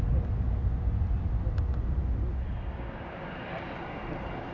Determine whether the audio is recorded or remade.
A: recorded